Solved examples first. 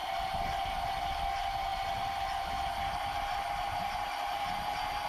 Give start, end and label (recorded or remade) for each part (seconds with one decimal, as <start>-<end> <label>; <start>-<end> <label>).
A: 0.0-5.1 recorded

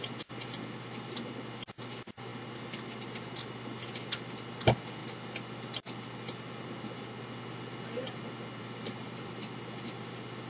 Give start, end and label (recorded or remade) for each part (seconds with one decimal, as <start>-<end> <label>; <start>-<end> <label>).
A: 0.0-8.6 recorded; 8.6-9.6 remade; 9.6-10.5 recorded

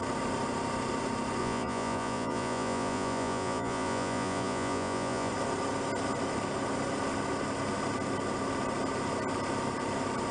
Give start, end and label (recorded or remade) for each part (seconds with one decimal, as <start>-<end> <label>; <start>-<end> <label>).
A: 0.0-1.4 recorded; 1.4-5.3 remade; 5.3-10.3 recorded

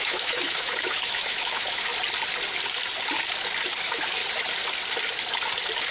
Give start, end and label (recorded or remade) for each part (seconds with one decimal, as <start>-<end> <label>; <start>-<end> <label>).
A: 0.0-1.9 remade; 1.9-3.8 recorded; 3.8-4.2 remade; 4.2-5.9 recorded

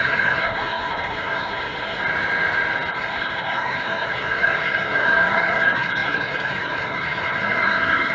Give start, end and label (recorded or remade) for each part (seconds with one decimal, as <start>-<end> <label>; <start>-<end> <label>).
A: 0.0-2.0 remade; 2.0-2.9 recorded; 2.9-8.1 remade